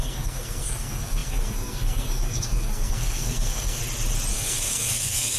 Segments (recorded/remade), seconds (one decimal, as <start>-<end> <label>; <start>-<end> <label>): 0.0-3.8 remade; 3.8-4.3 recorded; 4.3-5.4 remade